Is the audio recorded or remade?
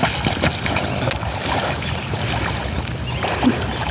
recorded